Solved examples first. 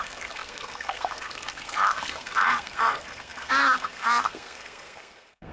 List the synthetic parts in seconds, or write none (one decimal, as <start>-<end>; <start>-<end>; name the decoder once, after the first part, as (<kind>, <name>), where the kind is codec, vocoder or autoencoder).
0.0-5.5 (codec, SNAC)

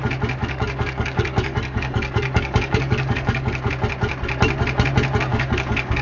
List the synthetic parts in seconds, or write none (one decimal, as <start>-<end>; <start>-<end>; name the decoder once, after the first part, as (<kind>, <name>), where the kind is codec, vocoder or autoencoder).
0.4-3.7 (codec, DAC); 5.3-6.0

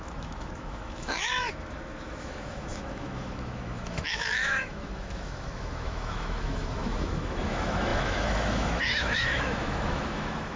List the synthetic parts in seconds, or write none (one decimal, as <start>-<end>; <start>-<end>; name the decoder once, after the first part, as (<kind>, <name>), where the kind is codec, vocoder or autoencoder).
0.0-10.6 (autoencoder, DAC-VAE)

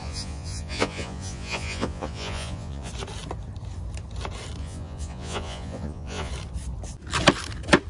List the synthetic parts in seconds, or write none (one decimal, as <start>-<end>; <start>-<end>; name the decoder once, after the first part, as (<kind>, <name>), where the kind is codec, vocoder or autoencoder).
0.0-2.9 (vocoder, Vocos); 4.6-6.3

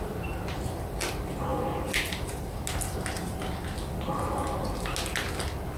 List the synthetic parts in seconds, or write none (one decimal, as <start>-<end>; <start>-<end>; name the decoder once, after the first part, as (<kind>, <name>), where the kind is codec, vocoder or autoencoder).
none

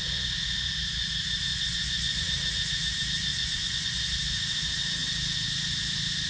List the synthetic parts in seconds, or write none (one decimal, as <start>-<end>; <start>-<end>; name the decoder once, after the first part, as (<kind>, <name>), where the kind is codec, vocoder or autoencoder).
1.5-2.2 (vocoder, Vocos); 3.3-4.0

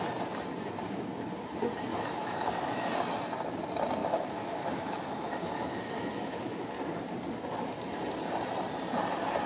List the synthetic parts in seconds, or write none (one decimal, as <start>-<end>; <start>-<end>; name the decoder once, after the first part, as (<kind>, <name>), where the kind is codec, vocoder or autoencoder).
1.9-2.9 (autoencoder, DAC-VAE); 4.0-6.7